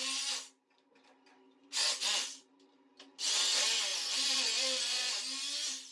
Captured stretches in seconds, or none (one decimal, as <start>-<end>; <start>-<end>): 0.0-3.9; 5.2-5.9